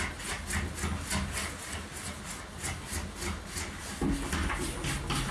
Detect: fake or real real